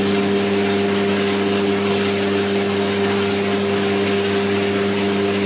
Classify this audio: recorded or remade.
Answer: recorded